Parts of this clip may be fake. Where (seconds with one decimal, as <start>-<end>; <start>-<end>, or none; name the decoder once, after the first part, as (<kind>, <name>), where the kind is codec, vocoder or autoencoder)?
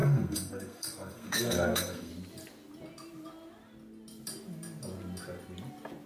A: 0.0-2.1 (codec, SNAC)